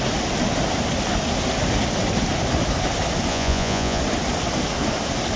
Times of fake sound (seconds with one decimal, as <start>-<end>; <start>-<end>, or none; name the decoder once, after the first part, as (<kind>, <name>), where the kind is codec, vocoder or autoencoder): 3.3-4.0 (vocoder, Vocos)